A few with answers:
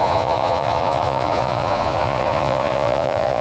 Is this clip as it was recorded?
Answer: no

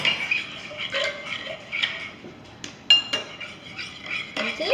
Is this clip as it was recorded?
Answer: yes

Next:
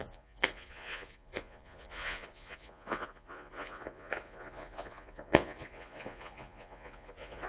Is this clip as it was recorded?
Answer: no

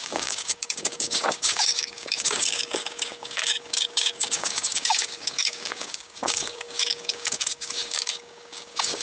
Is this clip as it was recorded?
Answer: no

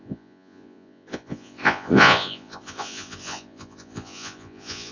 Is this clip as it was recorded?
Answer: no